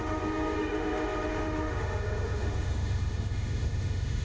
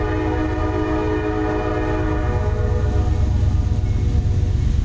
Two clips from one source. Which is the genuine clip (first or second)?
second